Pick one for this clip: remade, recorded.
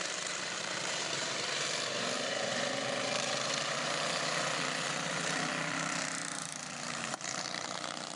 remade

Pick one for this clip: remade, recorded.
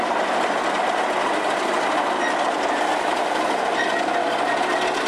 recorded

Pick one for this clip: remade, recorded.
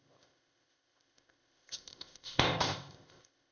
remade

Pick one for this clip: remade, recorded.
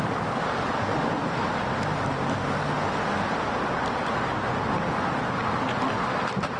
recorded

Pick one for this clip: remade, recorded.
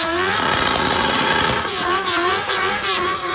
remade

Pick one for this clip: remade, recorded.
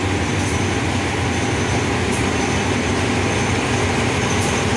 recorded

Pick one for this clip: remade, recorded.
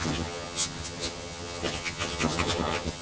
remade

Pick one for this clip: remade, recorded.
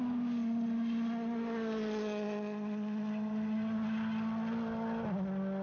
recorded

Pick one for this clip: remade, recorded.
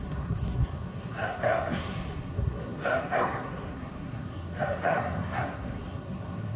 remade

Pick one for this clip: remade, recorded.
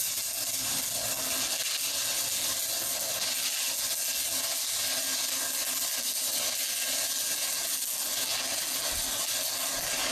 recorded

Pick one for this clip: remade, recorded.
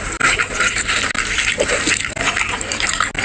recorded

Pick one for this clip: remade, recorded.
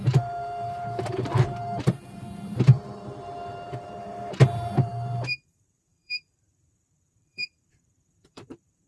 remade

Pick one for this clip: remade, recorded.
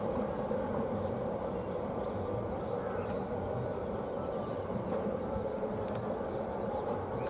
recorded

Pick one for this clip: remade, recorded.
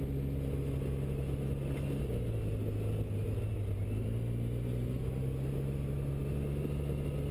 recorded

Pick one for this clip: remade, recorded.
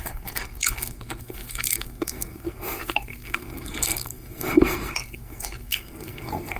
remade